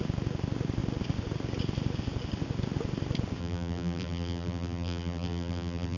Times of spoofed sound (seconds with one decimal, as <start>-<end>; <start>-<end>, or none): 3.4-6.0